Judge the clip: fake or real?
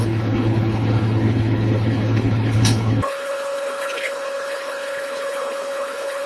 fake